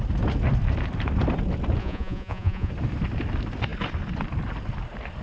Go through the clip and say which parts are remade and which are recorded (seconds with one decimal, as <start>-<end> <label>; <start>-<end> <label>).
0.0-1.8 recorded; 1.8-2.7 remade; 2.7-5.2 recorded